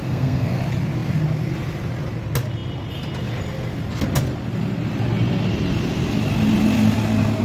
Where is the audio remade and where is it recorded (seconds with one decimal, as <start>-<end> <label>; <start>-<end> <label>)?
0.0-0.6 remade; 0.6-7.4 recorded